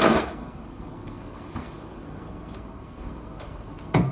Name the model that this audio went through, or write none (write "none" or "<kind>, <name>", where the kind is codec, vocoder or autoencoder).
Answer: codec, SNAC